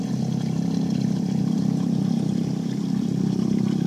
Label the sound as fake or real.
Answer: fake